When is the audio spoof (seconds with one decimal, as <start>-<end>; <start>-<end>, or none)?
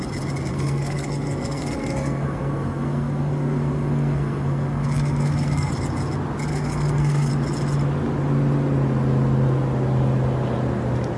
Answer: 0.5-5.7; 6.5-7.3